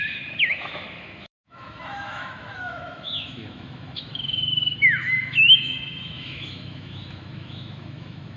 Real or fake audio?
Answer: fake